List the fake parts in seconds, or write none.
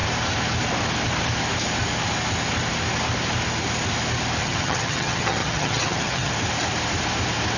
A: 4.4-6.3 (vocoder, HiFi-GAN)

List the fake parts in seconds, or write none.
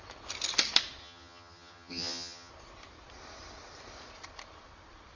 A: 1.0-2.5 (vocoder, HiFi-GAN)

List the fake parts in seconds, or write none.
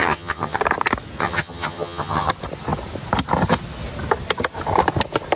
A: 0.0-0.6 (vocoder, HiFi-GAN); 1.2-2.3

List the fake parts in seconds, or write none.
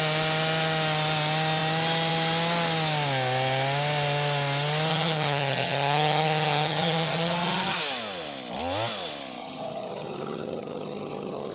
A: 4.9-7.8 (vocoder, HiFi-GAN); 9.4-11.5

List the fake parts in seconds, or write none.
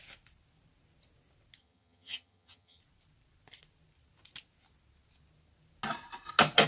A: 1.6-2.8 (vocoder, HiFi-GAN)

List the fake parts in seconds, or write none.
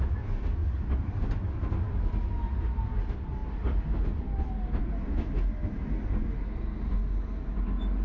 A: none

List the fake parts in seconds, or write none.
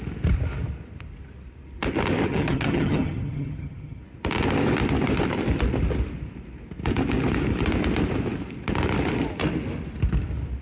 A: 2.3-4.0 (vocoder, HiFi-GAN)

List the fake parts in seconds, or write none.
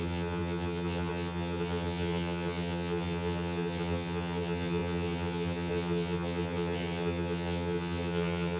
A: 0.0-8.6 (vocoder, HiFi-GAN)